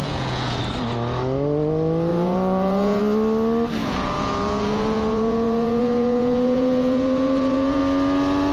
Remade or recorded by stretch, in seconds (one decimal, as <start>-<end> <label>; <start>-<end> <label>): 0.0-0.6 remade; 0.6-2.1 recorded; 2.1-3.0 remade; 3.0-3.8 recorded; 3.8-7.8 remade; 7.8-8.5 recorded